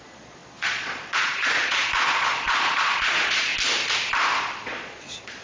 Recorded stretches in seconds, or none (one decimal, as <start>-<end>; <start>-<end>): 3.5-4.4